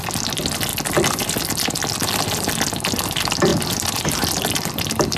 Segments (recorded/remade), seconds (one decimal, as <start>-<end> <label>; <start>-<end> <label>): 0.0-0.7 recorded; 0.7-1.2 remade; 1.2-1.8 recorded; 1.8-2.6 remade; 2.6-3.5 recorded; 3.5-4.7 remade; 4.7-5.2 recorded